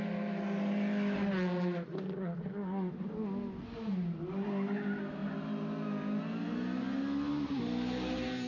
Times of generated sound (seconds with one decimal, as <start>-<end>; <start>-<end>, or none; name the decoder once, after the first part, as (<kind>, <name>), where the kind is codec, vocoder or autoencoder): none